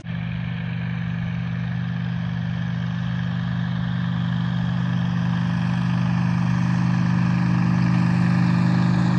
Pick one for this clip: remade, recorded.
recorded